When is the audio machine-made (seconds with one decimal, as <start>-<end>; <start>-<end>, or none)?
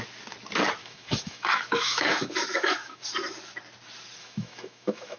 0.8-3.0; 4.2-5.2